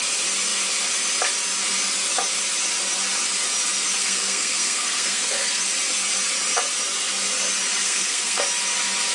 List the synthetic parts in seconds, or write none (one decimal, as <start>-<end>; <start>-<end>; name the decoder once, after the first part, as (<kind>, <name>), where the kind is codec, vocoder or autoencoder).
4.0-5.6 (codec, SNAC); 7.8-8.4